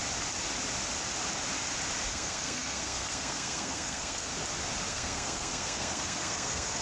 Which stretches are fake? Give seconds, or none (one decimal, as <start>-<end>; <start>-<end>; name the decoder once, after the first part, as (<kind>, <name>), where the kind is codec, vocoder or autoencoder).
2.1-4.3 (codec, SNAC); 4.9-6.8